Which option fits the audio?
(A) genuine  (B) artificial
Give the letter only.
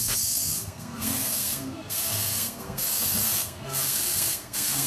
B